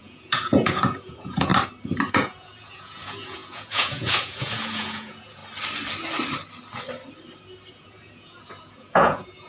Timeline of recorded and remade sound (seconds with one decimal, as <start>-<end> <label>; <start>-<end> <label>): 0.0-1.5 remade; 1.5-2.1 recorded; 2.1-5.4 remade; 5.4-7.7 recorded; 7.7-9.5 remade